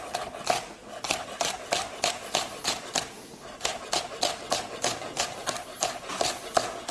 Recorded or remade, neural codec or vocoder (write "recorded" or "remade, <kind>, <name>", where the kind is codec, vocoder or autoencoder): recorded